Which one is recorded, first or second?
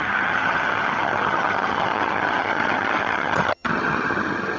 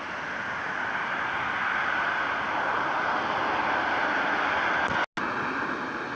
second